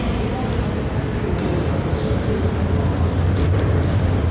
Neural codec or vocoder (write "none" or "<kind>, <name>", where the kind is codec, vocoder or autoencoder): none